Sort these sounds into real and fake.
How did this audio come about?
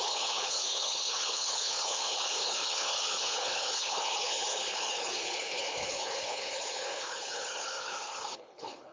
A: fake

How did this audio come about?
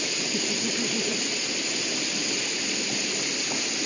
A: real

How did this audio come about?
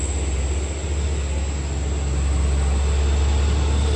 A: real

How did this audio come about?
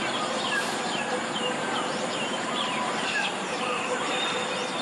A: fake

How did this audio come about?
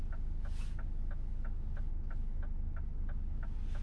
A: real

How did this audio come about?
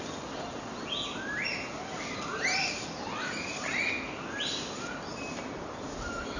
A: real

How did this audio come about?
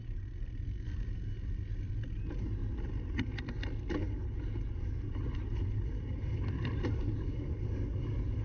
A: real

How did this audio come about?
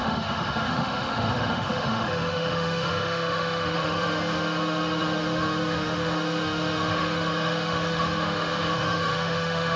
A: fake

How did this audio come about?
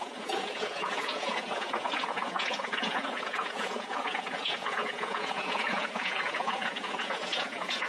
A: fake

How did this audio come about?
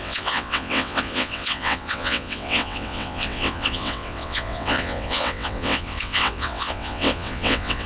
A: fake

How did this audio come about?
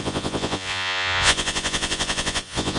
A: fake